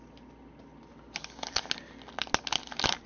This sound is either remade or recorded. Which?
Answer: recorded